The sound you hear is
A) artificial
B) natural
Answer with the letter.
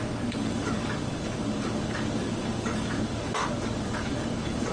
A